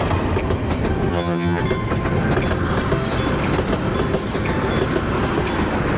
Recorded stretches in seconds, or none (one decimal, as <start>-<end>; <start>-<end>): 0.0-1.1; 1.6-6.0